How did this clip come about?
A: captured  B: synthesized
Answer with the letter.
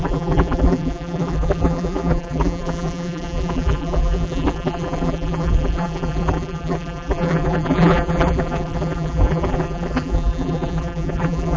B